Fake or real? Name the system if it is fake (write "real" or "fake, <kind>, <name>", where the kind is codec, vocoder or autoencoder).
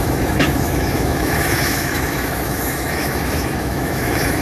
fake, autoencoder, DAC-VAE